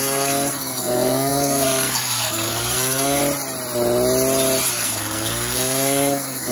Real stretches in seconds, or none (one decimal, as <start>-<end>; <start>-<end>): 3.2-4.7